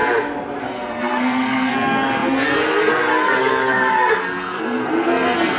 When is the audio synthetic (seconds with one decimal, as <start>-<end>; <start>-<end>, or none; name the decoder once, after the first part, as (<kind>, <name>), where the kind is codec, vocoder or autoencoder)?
0.6-5.6 (codec, SNAC)